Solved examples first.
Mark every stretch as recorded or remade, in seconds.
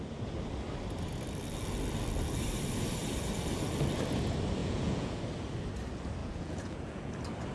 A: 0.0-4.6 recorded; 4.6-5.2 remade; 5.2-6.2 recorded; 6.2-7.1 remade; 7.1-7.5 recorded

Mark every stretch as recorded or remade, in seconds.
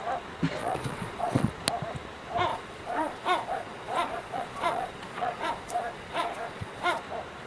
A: 0.0-0.6 recorded; 0.6-1.5 remade; 1.5-2.5 recorded; 2.5-7.0 remade; 7.0-7.5 recorded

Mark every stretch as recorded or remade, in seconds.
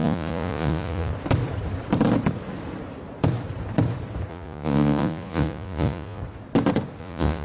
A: 0.0-1.1 remade; 1.1-4.3 recorded; 4.3-6.2 remade; 6.2-7.0 recorded; 7.0-7.4 remade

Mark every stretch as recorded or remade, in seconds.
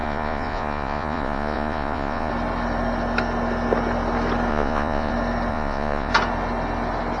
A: 0.0-2.3 remade; 2.3-4.5 recorded; 4.5-5.1 remade; 5.1-5.5 recorded; 5.5-6.1 remade; 6.1-7.2 recorded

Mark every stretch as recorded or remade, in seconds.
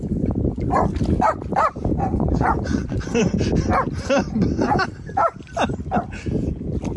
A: 0.0-2.1 recorded; 2.1-3.2 remade; 3.2-7.0 recorded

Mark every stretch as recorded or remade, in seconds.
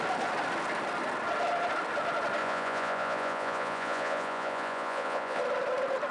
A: 0.0-2.4 recorded; 2.4-5.4 remade; 5.4-6.1 recorded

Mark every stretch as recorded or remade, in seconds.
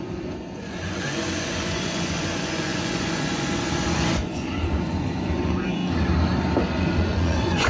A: 0.0-5.8 remade; 5.8-6.7 recorded; 6.7-7.7 remade